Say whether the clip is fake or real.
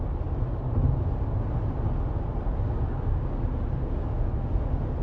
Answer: real